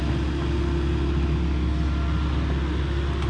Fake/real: real